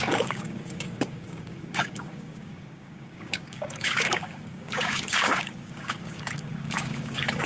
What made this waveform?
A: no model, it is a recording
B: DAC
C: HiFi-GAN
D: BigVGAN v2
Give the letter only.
B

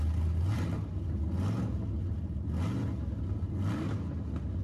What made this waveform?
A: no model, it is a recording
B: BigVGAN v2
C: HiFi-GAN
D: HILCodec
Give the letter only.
A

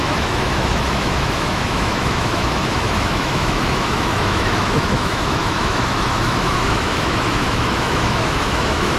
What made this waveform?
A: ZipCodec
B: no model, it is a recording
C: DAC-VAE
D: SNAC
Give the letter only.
C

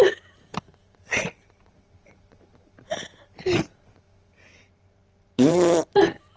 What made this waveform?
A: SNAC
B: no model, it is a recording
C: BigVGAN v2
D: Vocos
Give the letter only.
C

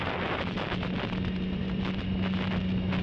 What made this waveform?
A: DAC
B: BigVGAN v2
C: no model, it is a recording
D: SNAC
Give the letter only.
C